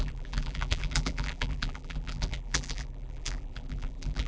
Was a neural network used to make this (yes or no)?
yes